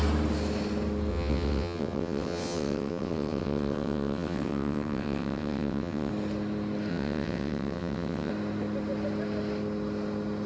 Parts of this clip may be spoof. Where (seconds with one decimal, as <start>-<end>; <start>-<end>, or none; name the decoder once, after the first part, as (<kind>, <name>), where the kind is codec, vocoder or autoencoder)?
1.1-6.1 (vocoder, WaveNeXt); 6.9-8.3